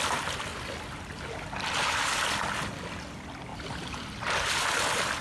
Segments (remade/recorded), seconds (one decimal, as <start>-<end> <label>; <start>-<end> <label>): 0.0-0.5 remade; 0.5-2.8 recorded; 2.8-5.2 remade